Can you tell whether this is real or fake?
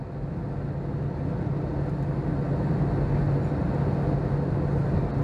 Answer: real